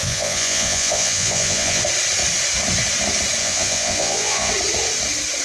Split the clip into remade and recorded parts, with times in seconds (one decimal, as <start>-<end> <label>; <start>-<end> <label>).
0.0-1.8 remade; 1.8-3.4 recorded; 3.4-4.5 remade; 4.5-5.4 recorded